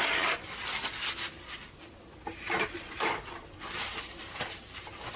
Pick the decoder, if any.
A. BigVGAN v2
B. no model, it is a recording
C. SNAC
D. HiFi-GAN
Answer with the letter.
A